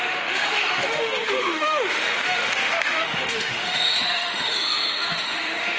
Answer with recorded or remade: remade